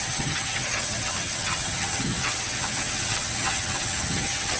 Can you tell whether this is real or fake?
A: fake